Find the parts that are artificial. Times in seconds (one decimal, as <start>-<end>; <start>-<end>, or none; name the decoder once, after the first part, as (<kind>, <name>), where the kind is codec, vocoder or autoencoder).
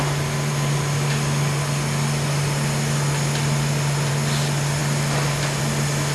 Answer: none